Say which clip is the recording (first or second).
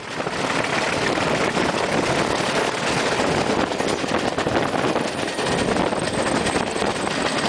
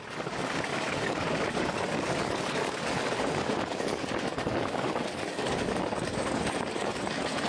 first